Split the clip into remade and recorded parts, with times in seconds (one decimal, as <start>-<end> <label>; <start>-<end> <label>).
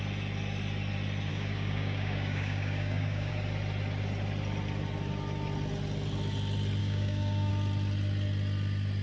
0.0-1.3 recorded; 1.3-3.3 remade; 3.3-6.8 recorded; 6.8-7.5 remade; 7.5-9.0 recorded